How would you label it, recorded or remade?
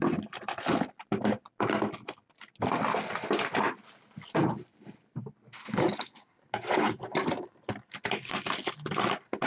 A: recorded